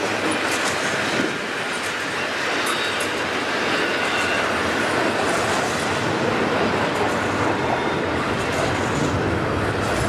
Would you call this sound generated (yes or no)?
no